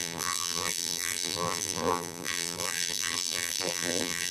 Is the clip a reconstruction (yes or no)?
yes